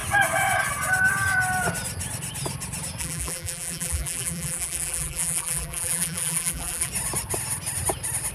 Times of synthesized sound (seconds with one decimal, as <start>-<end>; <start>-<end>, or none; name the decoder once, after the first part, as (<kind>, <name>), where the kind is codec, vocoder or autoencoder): 3.0-6.9 (vocoder, BigVGAN v2)

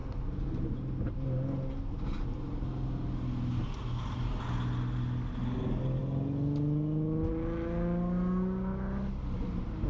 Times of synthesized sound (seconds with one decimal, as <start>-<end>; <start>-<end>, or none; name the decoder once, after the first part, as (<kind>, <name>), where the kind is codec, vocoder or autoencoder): none

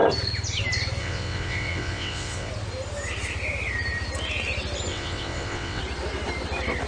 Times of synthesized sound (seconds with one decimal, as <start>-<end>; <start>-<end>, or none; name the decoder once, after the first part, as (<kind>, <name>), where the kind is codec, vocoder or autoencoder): 1.0-2.5 (vocoder, WaveNeXt); 4.9-5.8

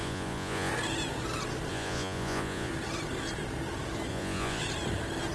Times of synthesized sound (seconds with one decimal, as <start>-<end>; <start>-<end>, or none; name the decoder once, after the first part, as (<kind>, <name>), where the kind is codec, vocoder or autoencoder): 0.0-0.7 (vocoder, Vocos); 1.7-2.7; 4.1-4.6

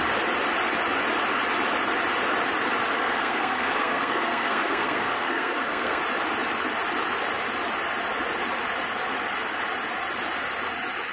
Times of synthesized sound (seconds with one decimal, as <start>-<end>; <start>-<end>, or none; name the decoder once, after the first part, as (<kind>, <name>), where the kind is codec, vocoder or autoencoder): 2.9-6.0 (codec, SNAC)

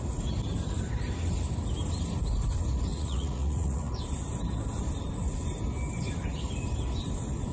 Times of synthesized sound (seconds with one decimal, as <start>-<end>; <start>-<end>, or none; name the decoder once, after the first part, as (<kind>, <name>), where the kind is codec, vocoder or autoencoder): 2.9-3.9 (vocoder, Vocos)

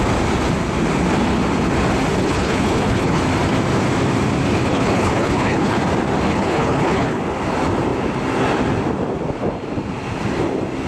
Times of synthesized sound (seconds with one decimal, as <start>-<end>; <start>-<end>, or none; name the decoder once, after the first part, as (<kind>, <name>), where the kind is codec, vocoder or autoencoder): 2.2-3.2 (codec, HILCodec); 4.7-5.8; 6.3-7.2

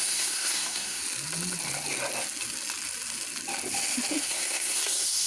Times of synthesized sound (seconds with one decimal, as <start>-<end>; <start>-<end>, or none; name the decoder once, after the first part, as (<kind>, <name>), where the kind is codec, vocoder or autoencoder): 0.0-1.0 (codec, SNAC); 4.2-5.3